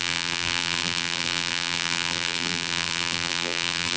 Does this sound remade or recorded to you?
remade